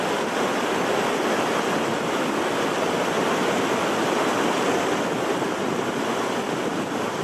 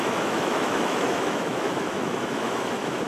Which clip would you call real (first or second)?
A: first